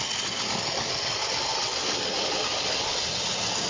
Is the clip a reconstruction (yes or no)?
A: no